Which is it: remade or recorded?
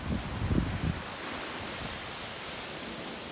recorded